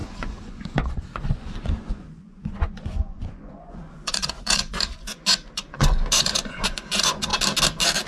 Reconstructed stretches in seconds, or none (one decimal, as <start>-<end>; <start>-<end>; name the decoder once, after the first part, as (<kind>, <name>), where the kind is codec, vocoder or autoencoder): 0.0-7.3 (vocoder, Vocos)